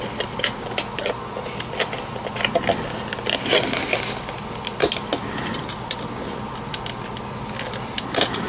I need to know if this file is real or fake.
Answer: real